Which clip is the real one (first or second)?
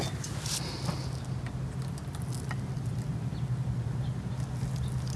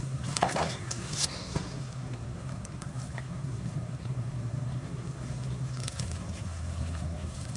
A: first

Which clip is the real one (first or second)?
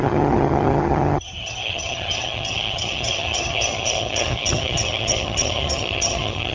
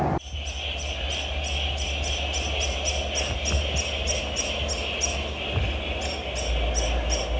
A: second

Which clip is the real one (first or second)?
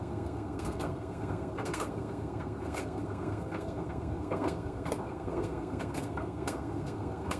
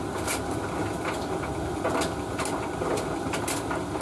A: second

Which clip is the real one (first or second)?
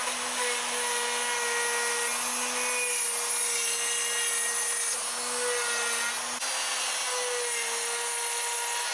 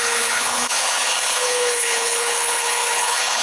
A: first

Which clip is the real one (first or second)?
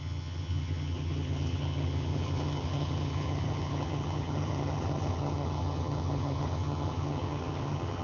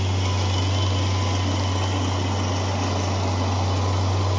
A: second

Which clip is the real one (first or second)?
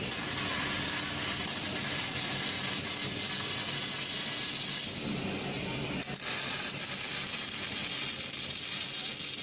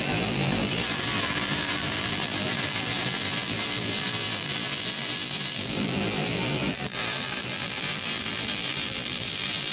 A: first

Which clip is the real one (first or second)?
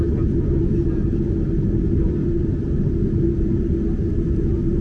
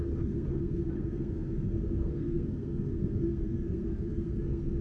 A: first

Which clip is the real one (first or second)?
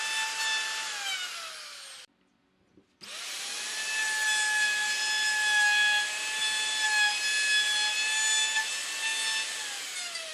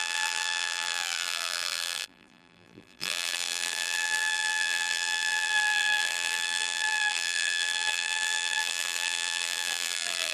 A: first